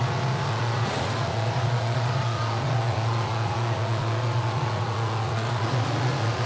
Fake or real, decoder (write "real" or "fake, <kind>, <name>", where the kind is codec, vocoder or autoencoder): fake, vocoder, Vocos